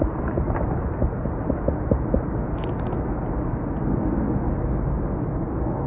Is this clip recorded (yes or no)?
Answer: yes